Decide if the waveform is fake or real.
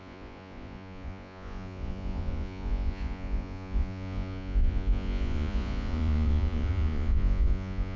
fake